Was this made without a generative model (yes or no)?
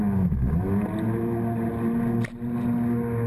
yes